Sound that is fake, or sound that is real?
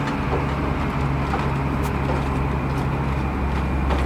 real